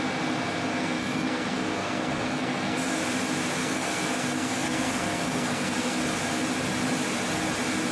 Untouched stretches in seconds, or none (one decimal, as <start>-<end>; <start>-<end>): 0.0-0.7; 3.0-3.6; 6.0-7.9